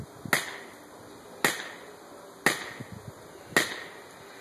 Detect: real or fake real